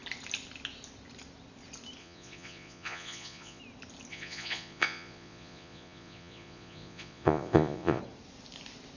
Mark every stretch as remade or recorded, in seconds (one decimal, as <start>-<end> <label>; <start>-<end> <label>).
0.0-2.0 recorded; 2.0-3.6 remade; 3.6-4.1 recorded; 4.1-8.0 remade; 8.0-9.0 recorded